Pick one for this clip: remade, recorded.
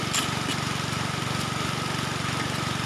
recorded